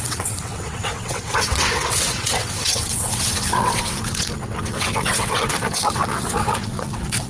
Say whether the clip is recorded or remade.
remade